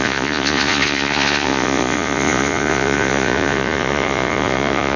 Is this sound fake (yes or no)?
yes